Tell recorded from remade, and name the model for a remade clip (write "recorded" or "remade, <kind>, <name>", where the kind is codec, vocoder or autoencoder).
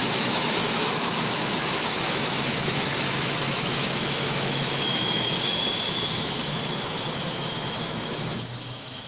remade, autoencoder, DAC-VAE